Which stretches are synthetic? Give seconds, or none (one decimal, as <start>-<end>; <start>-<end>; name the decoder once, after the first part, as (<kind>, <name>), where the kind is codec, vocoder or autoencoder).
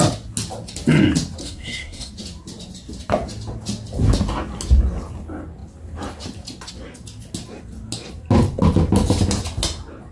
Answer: 1.4-2.1 (codec, SNAC)